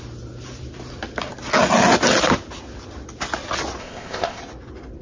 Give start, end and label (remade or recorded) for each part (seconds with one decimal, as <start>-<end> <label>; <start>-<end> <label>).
0.0-3.8 recorded; 3.8-4.4 remade; 4.4-5.0 recorded